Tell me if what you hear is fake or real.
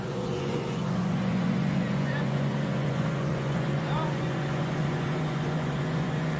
fake